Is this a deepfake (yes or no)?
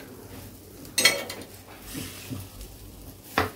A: no